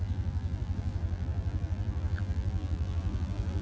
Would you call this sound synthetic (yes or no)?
yes